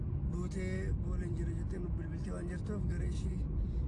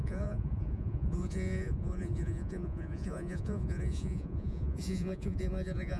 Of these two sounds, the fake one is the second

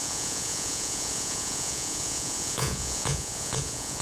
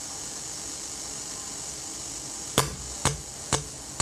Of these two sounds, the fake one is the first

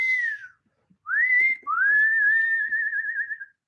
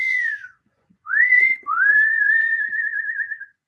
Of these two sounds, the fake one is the second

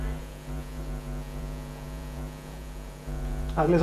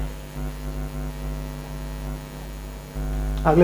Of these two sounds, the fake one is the first